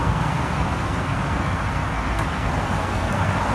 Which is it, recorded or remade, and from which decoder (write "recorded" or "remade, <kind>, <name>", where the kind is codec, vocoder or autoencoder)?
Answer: remade, codec, SNAC